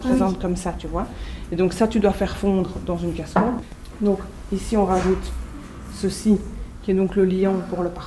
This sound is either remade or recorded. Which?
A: remade